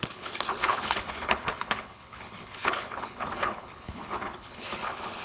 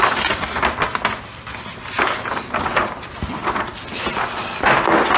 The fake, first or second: first